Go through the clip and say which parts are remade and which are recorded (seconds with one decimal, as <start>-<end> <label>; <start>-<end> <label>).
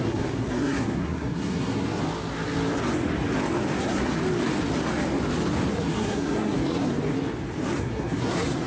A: 0.0-2.0 remade; 2.0-3.8 recorded; 3.8-4.2 remade; 4.2-5.7 recorded; 5.7-6.9 remade; 6.9-7.8 recorded; 7.8-8.7 remade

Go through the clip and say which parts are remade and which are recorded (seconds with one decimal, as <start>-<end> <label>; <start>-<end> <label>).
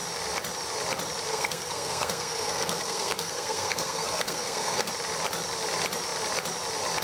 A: 0.0-1.3 recorded; 1.3-4.9 remade; 4.9-7.0 recorded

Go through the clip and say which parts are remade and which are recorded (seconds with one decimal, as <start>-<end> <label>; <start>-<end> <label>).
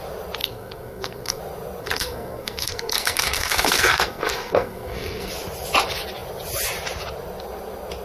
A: 0.0-0.4 recorded; 0.4-1.4 remade; 1.4-1.8 recorded; 1.8-5.3 remade; 5.3-8.0 recorded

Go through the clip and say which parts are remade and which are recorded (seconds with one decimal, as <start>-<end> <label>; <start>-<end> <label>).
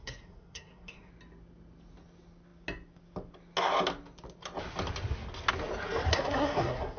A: 0.0-1.1 remade; 1.1-6.1 recorded; 6.1-7.0 remade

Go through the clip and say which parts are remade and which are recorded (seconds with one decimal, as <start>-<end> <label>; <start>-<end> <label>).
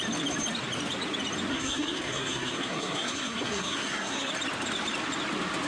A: 0.0-1.5 recorded; 1.5-4.3 remade; 4.3-5.7 recorded